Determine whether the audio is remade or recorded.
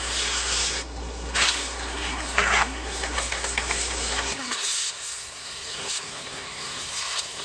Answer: remade